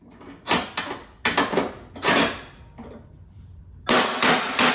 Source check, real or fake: real